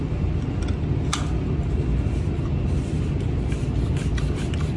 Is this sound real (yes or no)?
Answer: yes